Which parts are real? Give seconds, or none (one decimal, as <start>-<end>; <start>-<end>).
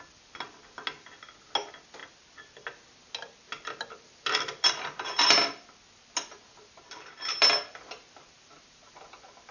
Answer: 0.0-9.5